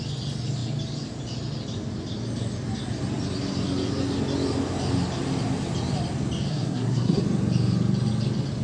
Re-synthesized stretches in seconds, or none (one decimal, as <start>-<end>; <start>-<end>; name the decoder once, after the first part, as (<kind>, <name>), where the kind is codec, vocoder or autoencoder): 6.5-7.2 (codec, SNAC)

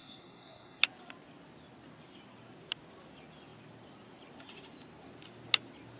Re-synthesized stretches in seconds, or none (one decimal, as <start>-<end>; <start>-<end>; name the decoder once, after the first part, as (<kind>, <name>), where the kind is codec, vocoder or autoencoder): 0.0-0.8 (codec, SNAC)

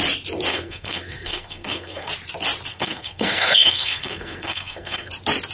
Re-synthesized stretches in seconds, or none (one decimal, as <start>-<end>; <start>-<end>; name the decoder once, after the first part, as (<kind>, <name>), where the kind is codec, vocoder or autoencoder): 0.5-2.1 (codec, SNAC); 2.7-5.1

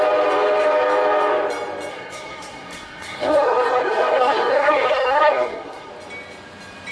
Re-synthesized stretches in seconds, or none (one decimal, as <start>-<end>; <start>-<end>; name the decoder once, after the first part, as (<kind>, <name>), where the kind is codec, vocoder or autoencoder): 1.9-5.9 (codec, SNAC)

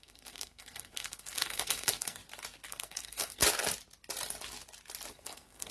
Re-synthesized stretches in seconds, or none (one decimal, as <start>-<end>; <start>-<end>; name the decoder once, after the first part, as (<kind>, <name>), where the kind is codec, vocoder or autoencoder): 0.0-2.2 (codec, SNAC); 2.7-3.4; 5.1-5.7

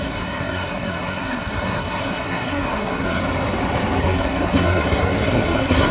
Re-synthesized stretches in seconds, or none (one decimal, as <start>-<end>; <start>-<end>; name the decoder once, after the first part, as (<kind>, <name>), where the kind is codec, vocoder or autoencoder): 0.0-3.2 (codec, SNAC); 4.0-5.9

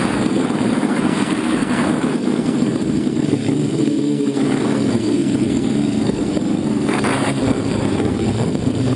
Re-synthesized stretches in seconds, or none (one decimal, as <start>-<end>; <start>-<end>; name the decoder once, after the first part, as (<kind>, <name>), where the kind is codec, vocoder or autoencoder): 0.0-9.0 (codec, SNAC)

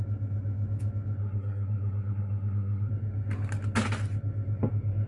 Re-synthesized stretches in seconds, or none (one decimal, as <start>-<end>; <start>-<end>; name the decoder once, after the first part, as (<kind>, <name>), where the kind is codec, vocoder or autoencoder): 1.2-2.9 (codec, SNAC)